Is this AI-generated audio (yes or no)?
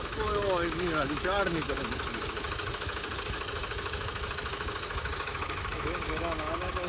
yes